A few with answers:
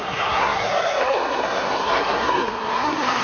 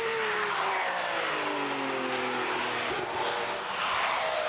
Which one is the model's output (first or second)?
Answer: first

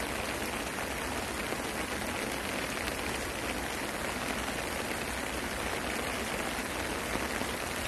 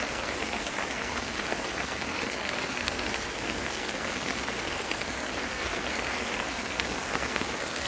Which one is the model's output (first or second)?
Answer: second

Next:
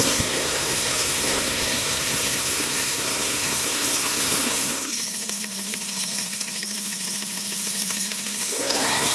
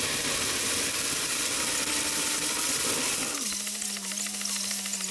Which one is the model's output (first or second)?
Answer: first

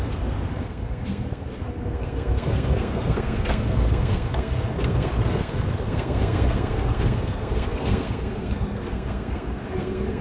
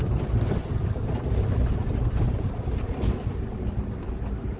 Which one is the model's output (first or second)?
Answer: first